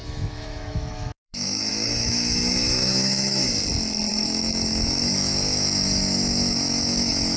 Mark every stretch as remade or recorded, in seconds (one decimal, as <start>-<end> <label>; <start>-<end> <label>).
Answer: 0.0-3.4 remade; 3.4-4.1 recorded; 4.1-7.4 remade